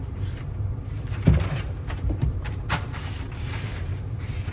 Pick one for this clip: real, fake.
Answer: fake